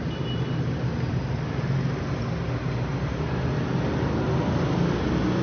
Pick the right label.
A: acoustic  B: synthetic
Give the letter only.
A